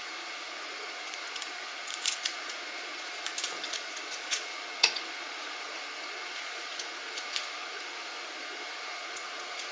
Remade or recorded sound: remade